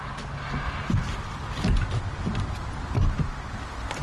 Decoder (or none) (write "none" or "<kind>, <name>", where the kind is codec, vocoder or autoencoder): none